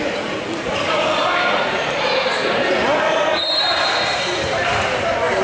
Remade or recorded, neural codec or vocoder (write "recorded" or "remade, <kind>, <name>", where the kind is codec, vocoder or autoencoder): remade, vocoder, BigVGAN v2